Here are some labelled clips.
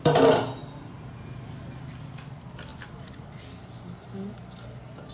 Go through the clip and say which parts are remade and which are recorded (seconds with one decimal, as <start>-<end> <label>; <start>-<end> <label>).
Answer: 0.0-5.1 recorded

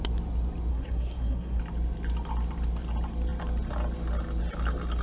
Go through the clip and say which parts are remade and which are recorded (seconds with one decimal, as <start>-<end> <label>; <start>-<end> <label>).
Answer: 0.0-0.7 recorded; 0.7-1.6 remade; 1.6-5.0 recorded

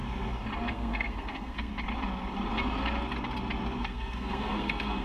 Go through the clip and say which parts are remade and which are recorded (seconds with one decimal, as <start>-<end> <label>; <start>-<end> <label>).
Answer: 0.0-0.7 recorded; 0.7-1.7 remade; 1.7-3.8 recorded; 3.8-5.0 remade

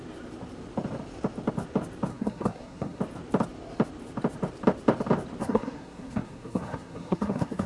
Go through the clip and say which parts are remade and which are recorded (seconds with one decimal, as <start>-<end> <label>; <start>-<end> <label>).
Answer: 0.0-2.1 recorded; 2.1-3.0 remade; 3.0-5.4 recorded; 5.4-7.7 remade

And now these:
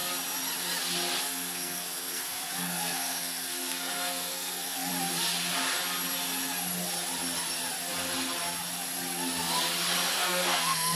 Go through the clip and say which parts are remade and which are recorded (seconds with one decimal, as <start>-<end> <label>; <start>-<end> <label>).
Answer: 0.0-1.2 recorded; 1.2-4.9 remade; 4.9-10.1 recorded; 10.1-11.0 remade